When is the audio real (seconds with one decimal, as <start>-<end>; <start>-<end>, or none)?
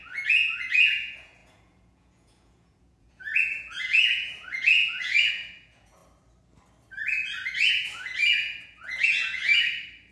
6.0-7.7; 9.5-10.1